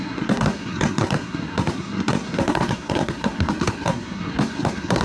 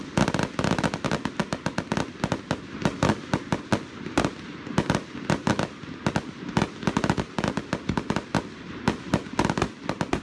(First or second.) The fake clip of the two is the first